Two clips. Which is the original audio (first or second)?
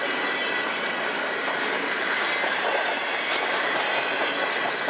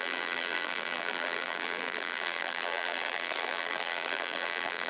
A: first